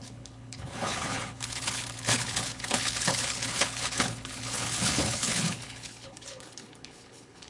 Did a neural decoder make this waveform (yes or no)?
yes